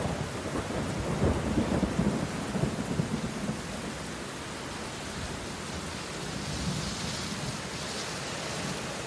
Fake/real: real